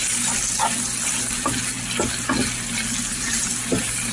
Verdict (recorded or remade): recorded